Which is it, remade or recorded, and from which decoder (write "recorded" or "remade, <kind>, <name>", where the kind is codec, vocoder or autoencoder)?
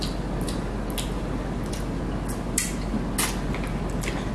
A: recorded